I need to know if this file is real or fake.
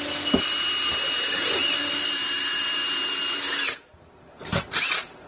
real